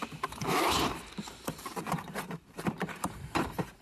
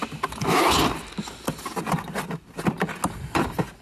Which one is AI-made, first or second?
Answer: first